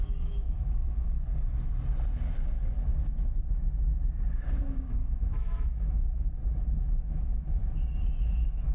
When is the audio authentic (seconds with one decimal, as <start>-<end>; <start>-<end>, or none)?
1.3-4.6; 7.6-8.2

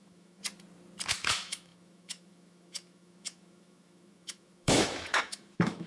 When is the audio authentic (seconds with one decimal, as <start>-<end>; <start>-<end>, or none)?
0.4-1.1

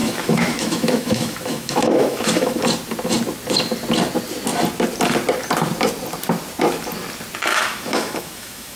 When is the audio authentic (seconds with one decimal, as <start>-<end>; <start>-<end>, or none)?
2.6-7.5